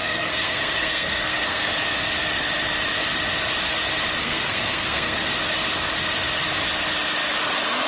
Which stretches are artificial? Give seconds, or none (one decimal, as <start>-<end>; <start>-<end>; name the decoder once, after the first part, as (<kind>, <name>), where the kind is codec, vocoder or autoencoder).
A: 0.0-1.7 (codec, SNAC); 4.2-5.2